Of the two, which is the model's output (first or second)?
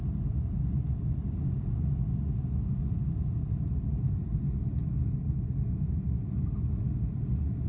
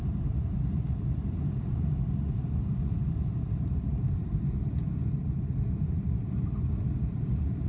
second